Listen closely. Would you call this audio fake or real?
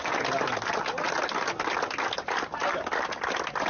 real